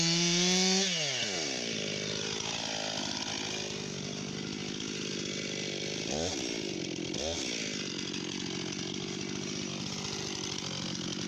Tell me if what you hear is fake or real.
real